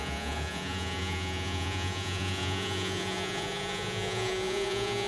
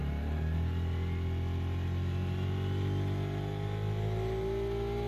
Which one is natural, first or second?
second